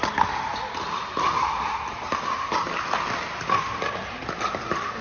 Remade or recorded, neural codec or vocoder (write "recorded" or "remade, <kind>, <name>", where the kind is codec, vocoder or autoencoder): recorded